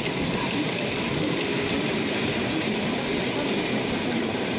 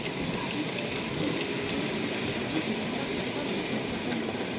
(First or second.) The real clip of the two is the second